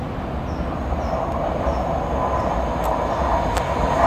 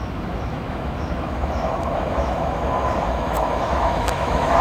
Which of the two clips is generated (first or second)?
second